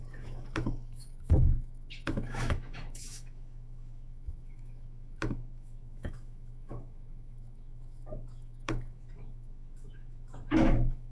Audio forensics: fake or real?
fake